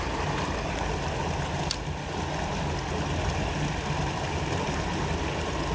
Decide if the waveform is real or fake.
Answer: real